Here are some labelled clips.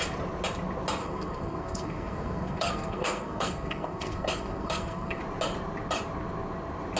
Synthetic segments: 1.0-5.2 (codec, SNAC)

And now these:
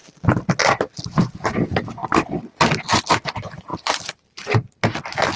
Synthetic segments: 0.0-0.5 (vocoder, BigVGAN v2); 2.0-2.7; 3.7-4.2

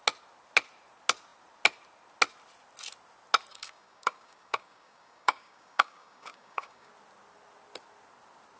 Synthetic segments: 3.5-6.9 (codec, DAC)

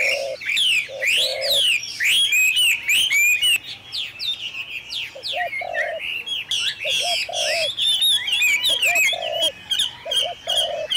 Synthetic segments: none

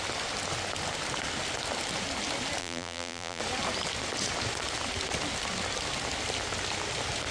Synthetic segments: 2.6-3.4 (vocoder, BigVGAN v2)

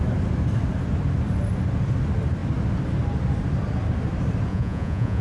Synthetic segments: 4.5-5.2 (vocoder, Vocos)